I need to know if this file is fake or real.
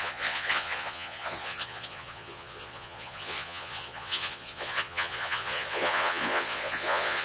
fake